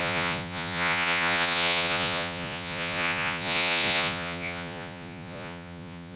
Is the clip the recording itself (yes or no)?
no